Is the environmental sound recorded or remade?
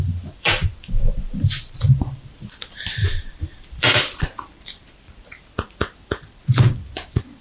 remade